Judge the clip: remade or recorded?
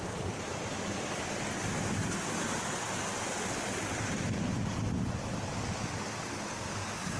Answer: recorded